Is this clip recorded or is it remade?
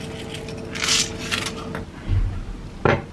recorded